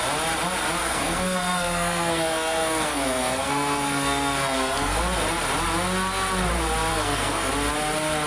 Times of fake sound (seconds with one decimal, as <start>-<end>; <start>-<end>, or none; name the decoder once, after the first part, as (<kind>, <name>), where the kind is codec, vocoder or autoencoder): 0.8-5.0 (codec, SNAC); 6.9-7.5